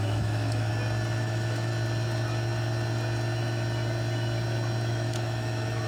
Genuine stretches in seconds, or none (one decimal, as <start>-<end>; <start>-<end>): 0.7-1.2; 1.7-4.9